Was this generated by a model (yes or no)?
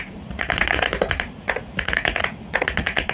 yes